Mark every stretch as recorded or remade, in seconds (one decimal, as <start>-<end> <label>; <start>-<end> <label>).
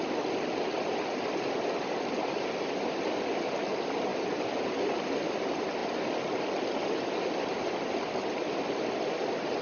0.0-9.6 recorded